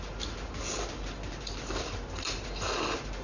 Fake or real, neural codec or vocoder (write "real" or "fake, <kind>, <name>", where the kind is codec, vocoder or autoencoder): real